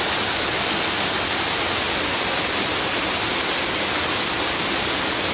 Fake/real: real